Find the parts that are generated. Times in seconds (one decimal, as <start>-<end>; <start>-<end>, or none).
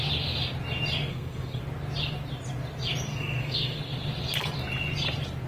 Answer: 1.1-1.6; 3.1-3.8